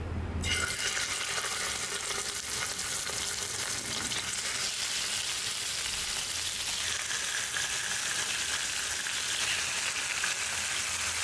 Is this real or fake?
real